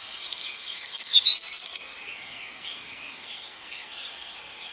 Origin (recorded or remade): remade